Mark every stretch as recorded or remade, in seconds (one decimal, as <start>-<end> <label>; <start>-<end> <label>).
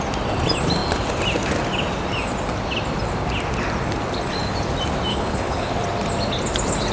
0.0-5.1 recorded; 5.1-5.7 remade; 5.7-6.9 recorded